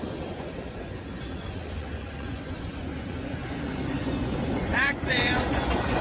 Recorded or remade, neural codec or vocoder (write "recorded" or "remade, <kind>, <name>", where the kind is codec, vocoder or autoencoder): remade, vocoder, Vocos